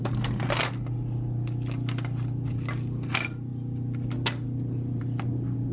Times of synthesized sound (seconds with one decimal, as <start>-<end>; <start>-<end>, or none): none